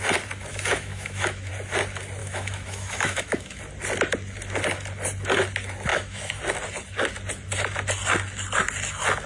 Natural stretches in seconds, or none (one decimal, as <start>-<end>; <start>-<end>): 0.0-0.5; 1.5-2.2; 3.6-5.9; 6.4-9.3